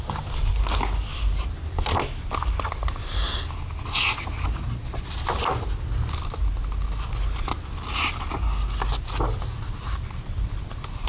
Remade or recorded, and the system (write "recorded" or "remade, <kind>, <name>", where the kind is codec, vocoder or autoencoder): recorded